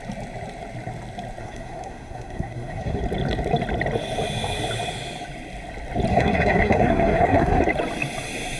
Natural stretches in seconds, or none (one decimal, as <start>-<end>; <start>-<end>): 0.0-1.4; 3.0-6.1; 7.6-8.6